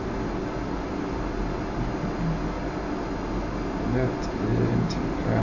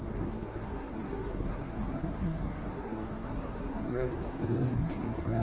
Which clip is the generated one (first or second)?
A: second